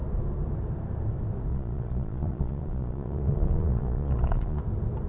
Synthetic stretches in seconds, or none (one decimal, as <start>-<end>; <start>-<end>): 1.5-4.6